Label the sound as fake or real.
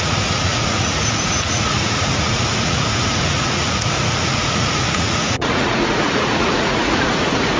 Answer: fake